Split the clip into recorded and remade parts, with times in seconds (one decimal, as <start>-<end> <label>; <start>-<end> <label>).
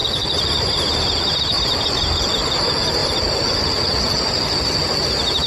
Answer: 0.0-1.4 remade; 1.4-3.0 recorded; 3.0-4.6 remade; 4.6-5.5 recorded